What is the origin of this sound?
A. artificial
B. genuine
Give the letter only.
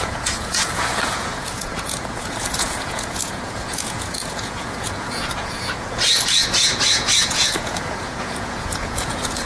A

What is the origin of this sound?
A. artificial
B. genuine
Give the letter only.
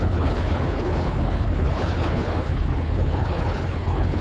A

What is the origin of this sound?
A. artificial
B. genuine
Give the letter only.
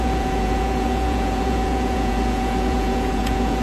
A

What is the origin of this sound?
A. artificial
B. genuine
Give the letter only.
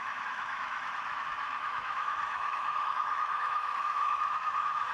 A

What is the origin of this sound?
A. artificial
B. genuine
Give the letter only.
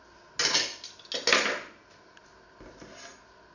B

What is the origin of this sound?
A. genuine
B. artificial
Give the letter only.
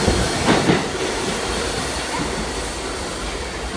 A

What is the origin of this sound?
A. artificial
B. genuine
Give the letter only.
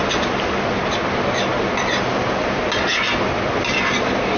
B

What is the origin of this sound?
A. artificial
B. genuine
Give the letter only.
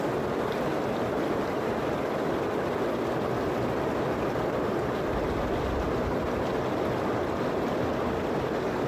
B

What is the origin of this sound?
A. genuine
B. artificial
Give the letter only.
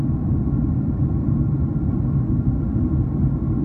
A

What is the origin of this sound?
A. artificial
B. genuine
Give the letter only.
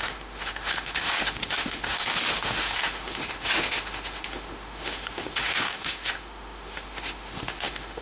A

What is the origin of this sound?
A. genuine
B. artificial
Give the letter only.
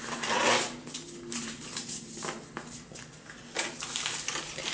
A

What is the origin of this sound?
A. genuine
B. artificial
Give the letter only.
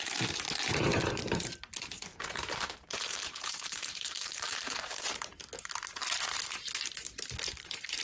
B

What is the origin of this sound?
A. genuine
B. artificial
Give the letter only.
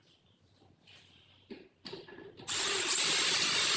A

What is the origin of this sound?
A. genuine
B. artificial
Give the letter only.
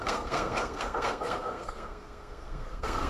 B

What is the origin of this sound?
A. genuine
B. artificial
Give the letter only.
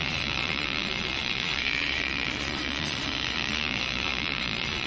B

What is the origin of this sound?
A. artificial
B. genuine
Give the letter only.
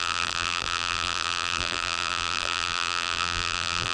A